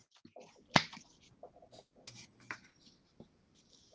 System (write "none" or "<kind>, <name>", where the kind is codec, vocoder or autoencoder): none